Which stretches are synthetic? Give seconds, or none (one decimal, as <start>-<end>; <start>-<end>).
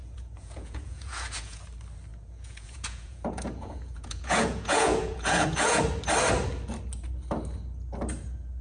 0.0-1.6; 2.1-5.8